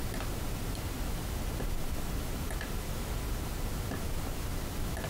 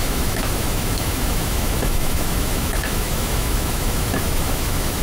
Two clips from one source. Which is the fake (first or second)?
second